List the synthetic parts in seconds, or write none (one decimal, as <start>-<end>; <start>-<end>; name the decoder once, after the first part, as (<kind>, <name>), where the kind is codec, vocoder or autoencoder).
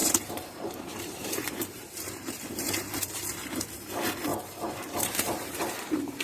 0.0-3.7 (vocoder, BigVGAN v2); 4.3-6.2